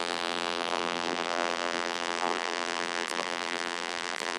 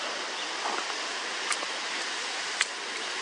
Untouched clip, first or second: second